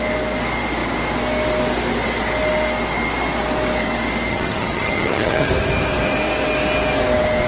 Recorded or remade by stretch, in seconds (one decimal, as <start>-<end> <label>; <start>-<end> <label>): 0.0-4.3 recorded; 4.3-5.5 remade; 5.5-7.5 recorded